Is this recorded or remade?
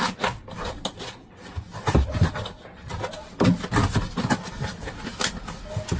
recorded